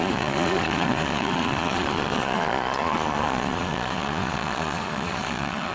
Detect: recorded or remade remade